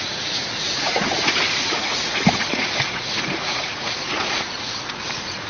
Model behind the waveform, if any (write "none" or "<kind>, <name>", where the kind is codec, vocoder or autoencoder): vocoder, Vocos